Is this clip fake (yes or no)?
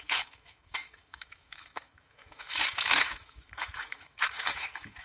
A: yes